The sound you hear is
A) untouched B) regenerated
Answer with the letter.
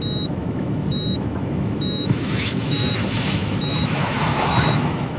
B